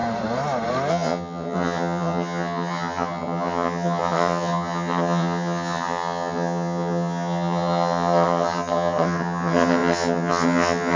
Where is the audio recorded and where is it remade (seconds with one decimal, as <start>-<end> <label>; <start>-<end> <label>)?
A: 0.0-0.9 recorded; 0.9-11.0 remade